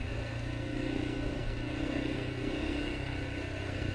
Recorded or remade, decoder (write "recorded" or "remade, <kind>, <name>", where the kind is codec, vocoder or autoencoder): remade, codec, SNAC